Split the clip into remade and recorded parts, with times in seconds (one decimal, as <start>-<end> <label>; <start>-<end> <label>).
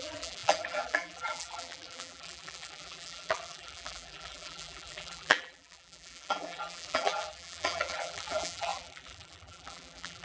0.0-10.2 remade